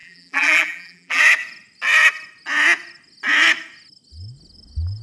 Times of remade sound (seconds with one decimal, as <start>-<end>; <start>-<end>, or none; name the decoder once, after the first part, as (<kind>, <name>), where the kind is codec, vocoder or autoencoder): 0.0-1.2 (vocoder, BigVGAN v2)